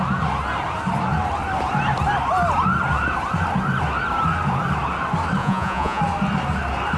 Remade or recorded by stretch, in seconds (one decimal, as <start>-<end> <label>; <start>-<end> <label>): 0.0-5.4 recorded; 5.4-6.0 remade; 6.0-7.0 recorded